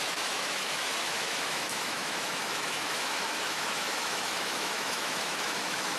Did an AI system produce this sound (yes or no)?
yes